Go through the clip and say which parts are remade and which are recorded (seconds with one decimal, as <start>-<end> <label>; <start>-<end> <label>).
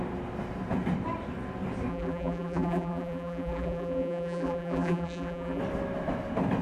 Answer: 0.0-1.9 recorded; 1.9-5.6 remade; 5.6-6.6 recorded